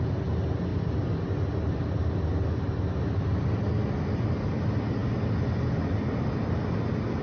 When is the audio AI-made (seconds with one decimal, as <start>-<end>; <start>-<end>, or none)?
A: none